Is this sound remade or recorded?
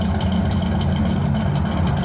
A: recorded